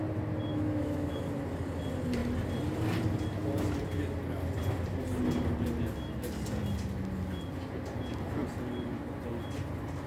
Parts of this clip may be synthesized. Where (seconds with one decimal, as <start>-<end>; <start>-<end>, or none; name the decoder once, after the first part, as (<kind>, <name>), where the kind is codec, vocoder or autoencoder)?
0.5-1.2 (autoencoder, DAC-VAE)